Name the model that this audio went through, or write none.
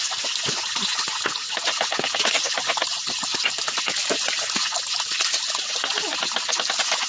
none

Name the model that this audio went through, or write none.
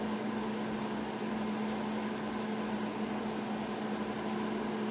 none